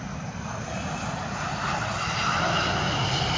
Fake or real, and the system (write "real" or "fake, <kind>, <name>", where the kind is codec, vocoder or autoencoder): real